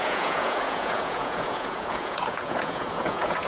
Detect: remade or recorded remade